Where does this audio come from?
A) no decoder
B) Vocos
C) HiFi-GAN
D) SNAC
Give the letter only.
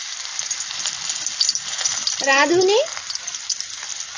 A